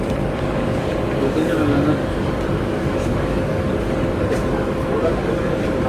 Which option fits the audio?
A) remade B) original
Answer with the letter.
A